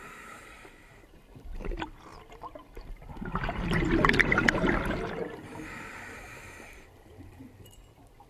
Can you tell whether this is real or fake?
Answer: fake